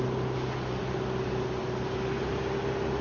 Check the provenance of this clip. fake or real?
real